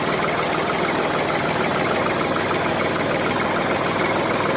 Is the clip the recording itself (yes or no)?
yes